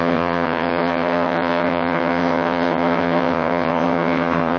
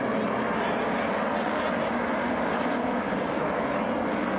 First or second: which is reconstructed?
first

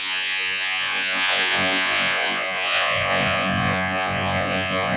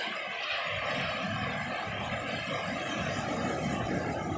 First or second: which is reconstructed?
first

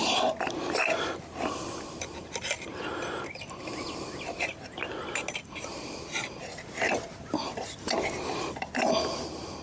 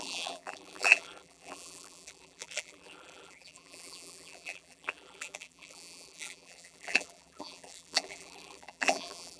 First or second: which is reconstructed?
second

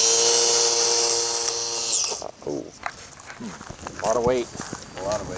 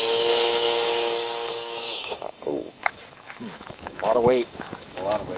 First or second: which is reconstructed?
second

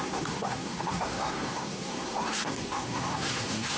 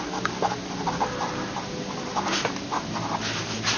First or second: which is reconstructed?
first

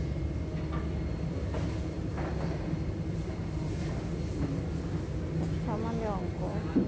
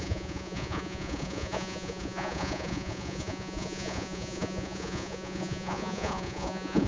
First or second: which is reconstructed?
second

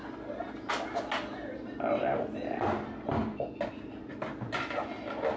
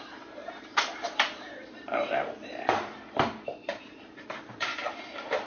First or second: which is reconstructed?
second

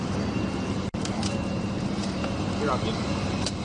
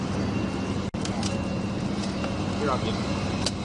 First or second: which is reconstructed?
first